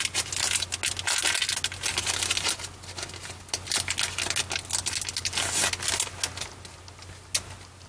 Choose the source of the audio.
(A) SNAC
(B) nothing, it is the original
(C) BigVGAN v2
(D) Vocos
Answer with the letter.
B